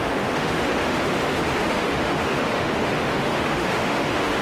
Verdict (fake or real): fake